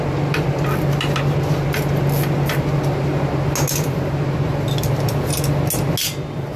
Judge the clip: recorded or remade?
recorded